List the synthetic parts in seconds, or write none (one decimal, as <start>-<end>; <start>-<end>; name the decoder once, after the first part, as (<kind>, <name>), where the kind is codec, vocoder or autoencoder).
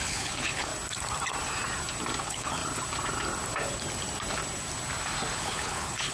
0.0-0.7 (codec, HILCodec); 2.2-2.6; 5.4-6.1